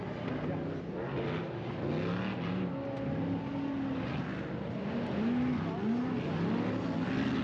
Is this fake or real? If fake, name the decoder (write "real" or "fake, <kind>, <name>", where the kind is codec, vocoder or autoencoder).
real